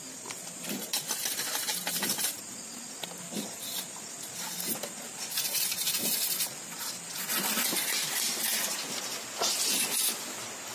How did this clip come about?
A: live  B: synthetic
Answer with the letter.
A